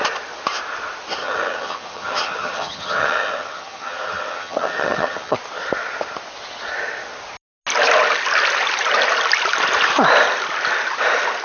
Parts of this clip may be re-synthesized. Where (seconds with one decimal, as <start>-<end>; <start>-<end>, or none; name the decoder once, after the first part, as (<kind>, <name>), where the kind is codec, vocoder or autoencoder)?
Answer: 1.2-5.4 (vocoder, HiFi-GAN)